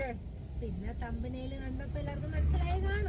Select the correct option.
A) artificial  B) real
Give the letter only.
B